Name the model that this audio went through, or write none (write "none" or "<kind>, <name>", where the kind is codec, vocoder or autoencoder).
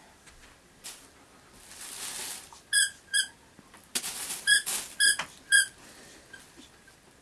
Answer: none